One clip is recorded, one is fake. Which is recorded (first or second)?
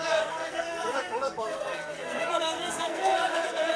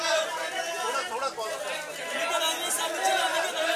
second